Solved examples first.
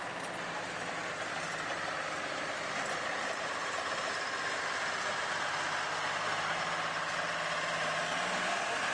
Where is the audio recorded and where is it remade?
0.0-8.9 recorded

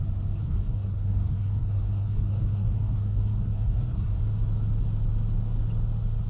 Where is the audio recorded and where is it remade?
0.0-0.4 recorded; 0.4-4.2 remade; 4.2-6.3 recorded